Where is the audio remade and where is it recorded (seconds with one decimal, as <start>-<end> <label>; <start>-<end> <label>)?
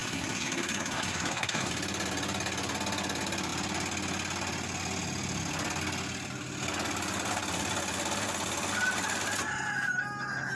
0.0-1.7 remade; 1.7-10.5 recorded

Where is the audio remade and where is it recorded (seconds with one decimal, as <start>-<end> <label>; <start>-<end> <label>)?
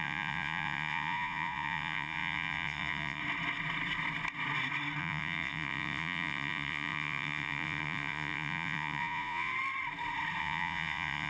0.0-3.2 remade; 3.2-5.0 recorded; 5.0-9.5 remade; 9.5-10.4 recorded; 10.4-11.3 remade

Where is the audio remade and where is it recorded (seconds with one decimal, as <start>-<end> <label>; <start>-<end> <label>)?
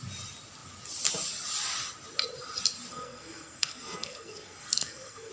0.0-2.9 recorded; 2.9-5.3 remade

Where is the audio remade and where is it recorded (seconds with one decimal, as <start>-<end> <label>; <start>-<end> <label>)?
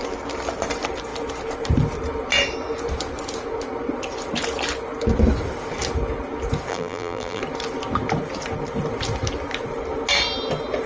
0.0-6.7 recorded; 6.7-7.4 remade; 7.4-10.9 recorded